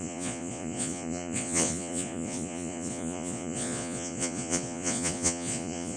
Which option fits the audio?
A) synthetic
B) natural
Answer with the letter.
A